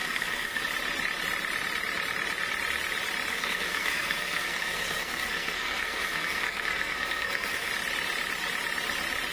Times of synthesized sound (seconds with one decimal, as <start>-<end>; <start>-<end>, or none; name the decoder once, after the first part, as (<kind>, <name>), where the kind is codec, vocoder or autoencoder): 0.0-0.6 (codec, SNAC); 3.3-7.7